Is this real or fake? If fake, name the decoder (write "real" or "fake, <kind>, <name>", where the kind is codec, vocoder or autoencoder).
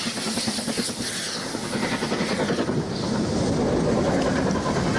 real